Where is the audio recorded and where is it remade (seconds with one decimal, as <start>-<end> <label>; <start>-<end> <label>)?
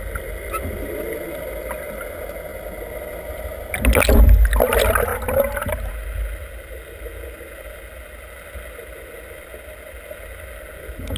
0.0-5.1 recorded; 5.1-5.9 remade; 5.9-11.2 recorded